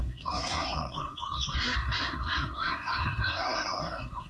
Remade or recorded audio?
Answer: remade